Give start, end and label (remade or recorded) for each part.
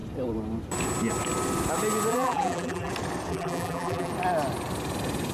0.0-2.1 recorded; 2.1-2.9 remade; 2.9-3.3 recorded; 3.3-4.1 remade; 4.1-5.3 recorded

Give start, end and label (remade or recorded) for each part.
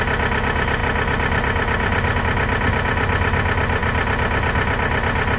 0.0-5.4 recorded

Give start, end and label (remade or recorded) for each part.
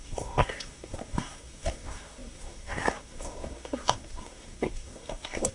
0.0-5.5 remade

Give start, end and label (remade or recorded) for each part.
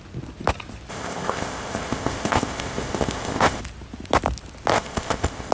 0.0-0.9 recorded; 0.9-3.6 remade; 3.6-4.7 recorded; 4.7-5.5 remade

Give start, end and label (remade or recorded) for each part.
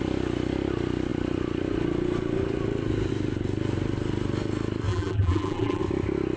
0.0-4.9 recorded; 4.9-5.8 remade; 5.8-6.4 recorded